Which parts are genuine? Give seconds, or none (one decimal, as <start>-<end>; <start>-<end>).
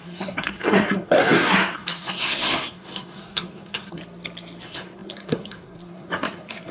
4.0-4.6